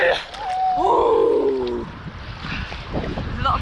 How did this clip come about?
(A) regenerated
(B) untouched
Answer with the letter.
B